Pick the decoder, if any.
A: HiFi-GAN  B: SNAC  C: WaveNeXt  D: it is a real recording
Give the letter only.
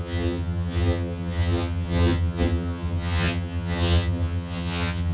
A